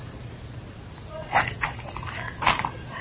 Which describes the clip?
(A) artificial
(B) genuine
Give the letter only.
B